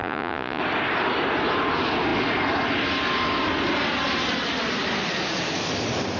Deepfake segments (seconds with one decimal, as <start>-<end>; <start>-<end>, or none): 0.0-0.6